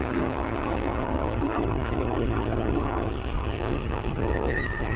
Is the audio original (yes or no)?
no